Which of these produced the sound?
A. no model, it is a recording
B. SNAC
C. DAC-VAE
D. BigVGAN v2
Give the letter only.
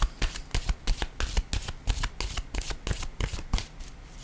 A